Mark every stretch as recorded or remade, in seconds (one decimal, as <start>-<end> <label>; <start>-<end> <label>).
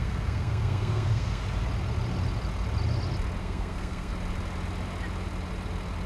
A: 0.0-1.4 remade; 1.4-3.4 recorded; 3.4-4.1 remade; 4.1-6.1 recorded